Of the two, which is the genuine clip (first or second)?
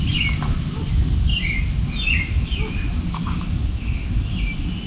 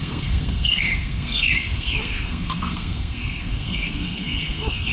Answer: first